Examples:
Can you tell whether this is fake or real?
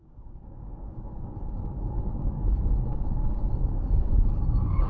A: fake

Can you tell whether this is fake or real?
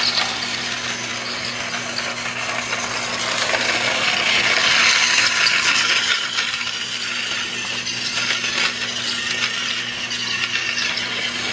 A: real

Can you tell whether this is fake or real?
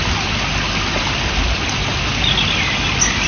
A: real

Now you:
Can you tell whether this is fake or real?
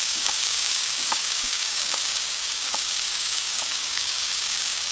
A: fake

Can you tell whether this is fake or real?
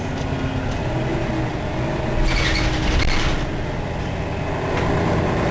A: real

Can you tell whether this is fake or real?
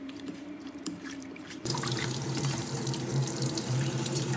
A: fake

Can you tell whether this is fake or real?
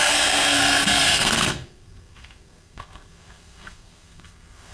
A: fake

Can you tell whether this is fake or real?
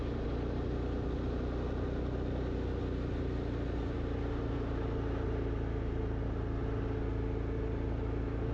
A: real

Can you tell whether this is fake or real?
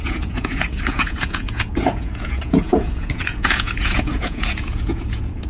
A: fake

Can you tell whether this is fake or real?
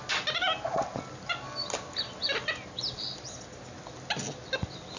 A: real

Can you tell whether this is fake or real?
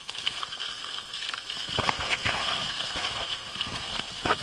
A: fake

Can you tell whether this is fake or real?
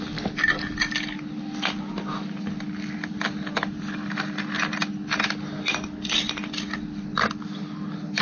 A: real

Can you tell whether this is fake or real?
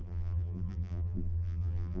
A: fake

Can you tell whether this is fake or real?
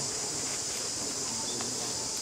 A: real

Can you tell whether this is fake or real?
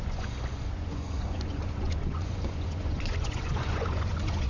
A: fake